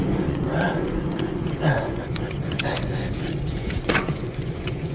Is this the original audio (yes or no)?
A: no